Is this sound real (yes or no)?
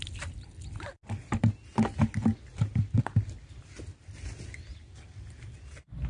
yes